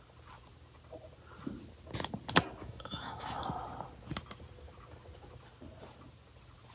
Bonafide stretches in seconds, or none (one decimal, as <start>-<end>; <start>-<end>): 0.0-2.6; 3.4-6.7